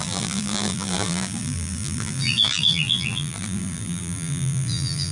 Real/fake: fake